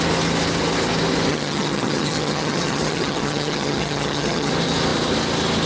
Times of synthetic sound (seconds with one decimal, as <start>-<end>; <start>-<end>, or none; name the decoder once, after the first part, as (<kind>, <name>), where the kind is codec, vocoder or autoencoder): 1.3-4.5 (vocoder, HiFi-GAN)

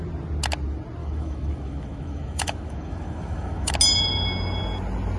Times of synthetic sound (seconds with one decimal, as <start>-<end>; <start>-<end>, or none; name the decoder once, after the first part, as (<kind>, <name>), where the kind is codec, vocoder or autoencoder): 1.0-3.7 (autoencoder, DAC-VAE)

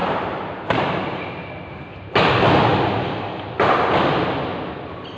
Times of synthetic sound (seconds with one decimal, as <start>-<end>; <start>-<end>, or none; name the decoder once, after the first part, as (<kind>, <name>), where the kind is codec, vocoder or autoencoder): 0.0-1.0 (vocoder, BigVGAN v2)

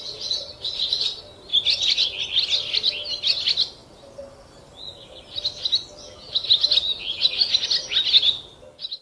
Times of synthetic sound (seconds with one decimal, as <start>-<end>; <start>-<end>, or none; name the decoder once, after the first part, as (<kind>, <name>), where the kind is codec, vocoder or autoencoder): none

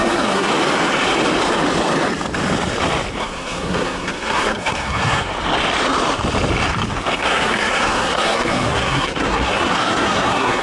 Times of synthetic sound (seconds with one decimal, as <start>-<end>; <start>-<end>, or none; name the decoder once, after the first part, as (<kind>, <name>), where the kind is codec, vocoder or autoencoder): 0.0-0.5 (codec, SNAC); 3.2-5.3; 7.2-10.6